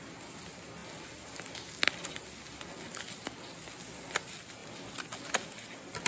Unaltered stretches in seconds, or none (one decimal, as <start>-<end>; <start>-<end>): 0.0-6.1